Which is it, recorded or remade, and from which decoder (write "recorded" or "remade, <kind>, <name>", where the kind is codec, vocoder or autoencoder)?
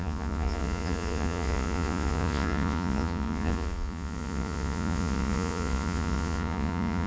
remade, vocoder, Vocos